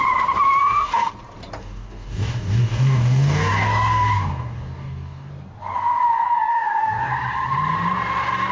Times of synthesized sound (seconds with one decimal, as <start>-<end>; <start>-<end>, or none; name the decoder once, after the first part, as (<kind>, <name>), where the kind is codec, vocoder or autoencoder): 0.6-1.1 (codec, DAC); 1.6-5.3; 6.5-7.1